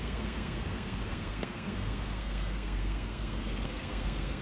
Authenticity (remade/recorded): remade